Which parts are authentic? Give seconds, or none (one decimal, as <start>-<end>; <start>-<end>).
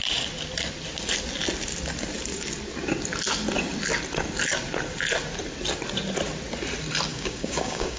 0.0-7.1